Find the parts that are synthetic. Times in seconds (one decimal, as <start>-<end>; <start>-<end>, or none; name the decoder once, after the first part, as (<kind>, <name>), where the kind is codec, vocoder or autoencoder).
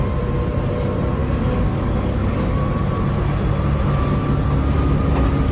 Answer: 1.2-2.6 (codec, DAC)